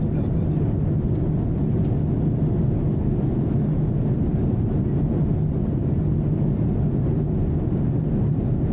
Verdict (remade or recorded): recorded